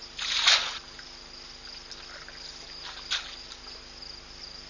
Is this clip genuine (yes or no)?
yes